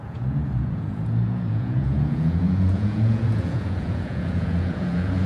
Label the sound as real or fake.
fake